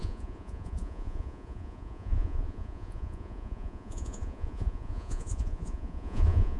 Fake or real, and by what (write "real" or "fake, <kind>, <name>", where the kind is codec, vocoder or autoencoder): fake, vocoder, Vocos